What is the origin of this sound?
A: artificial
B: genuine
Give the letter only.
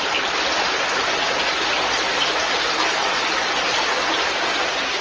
B